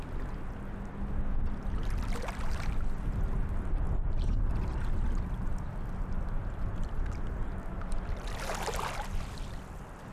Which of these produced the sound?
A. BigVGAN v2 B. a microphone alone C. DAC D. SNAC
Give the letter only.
B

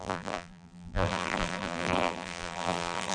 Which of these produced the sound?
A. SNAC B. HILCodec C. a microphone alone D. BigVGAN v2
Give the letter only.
D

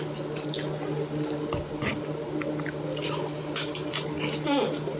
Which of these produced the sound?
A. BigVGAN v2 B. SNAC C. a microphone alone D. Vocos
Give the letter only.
C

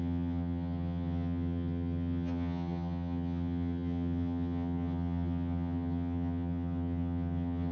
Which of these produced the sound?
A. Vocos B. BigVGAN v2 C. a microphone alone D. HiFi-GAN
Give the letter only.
D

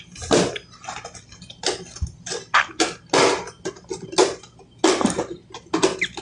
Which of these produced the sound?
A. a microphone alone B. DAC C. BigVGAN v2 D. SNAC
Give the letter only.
A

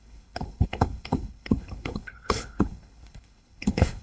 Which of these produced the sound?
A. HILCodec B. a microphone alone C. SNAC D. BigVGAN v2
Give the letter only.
A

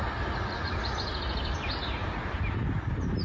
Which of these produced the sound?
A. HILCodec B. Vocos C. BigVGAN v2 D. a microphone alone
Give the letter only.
D